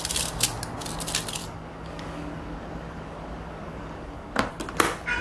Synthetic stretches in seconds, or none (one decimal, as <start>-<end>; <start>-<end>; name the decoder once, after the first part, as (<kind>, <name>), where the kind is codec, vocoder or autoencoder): 1.4-4.5 (codec, DAC)